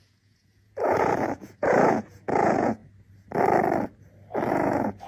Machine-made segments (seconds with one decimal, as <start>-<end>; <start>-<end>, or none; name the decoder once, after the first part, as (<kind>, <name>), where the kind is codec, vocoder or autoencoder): 0.0-2.8 (vocoder, Vocos); 4.5-5.1